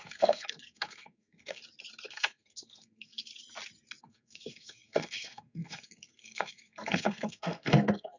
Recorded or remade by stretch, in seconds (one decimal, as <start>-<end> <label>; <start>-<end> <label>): 0.0-1.6 remade; 1.6-2.1 recorded; 2.1-3.3 remade; 3.3-4.0 recorded; 4.0-8.2 remade